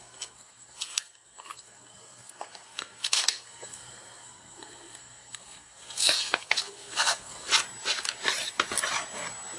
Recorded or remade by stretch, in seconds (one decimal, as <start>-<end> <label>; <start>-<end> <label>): 0.0-7.5 remade; 7.5-9.6 recorded